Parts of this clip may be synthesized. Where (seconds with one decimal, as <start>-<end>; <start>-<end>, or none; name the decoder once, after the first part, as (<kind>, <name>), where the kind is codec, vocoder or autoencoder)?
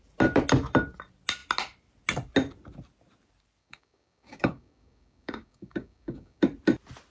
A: 3.6-6.4 (codec, DAC)